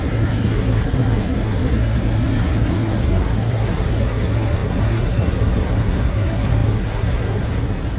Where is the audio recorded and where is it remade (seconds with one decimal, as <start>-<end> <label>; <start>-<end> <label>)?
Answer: 0.0-8.0 remade